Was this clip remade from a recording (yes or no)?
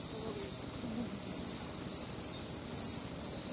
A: no